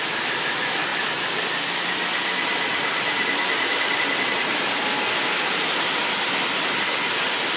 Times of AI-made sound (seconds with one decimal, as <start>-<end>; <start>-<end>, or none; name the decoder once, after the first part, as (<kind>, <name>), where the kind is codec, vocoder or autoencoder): none